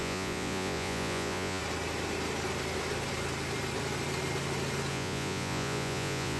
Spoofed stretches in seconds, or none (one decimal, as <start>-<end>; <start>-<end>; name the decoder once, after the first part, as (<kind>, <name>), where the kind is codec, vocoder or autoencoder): 0.0-1.6 (vocoder, Vocos); 4.9-6.4